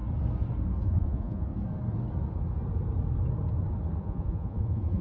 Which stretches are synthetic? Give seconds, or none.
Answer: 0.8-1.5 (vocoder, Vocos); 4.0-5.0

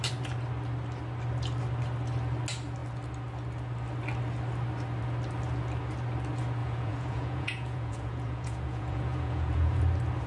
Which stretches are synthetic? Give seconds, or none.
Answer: 6.6-9.8 (vocoder, Vocos)

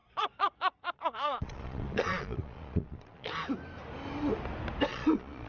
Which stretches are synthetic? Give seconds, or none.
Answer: 0.0-3.3 (vocoder, Vocos); 4.9-5.5

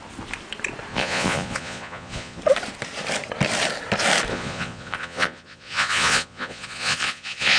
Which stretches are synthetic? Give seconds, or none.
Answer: 0.9-2.4 (vocoder, Vocos); 4.3-7.6